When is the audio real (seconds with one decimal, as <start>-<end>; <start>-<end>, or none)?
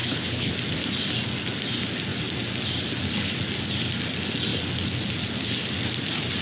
0.5-6.4